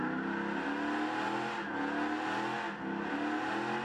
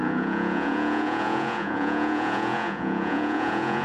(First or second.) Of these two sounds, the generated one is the second